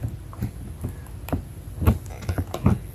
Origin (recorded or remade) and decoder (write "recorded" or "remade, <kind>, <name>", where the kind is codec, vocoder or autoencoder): recorded